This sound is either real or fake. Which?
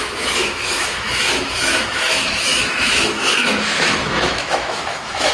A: fake